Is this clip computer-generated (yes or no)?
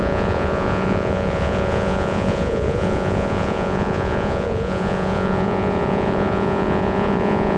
yes